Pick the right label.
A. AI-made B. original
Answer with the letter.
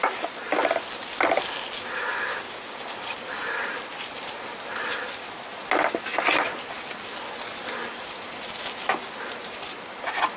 B